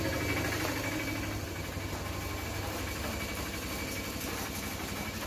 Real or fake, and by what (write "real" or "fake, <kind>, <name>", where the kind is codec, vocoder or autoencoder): real